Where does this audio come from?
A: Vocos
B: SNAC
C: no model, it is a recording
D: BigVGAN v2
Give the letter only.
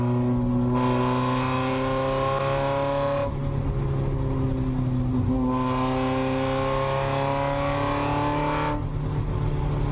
C